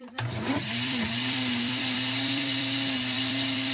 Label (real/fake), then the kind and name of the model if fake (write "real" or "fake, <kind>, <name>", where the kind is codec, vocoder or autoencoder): fake, vocoder, BigVGAN v2